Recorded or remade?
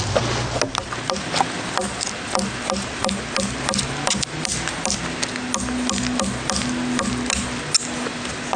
recorded